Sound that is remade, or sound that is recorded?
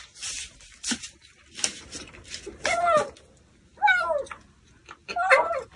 recorded